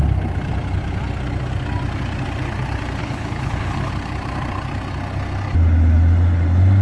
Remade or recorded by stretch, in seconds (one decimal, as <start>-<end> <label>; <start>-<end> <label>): 0.0-3.0 recorded; 3.0-3.9 remade; 3.9-6.8 recorded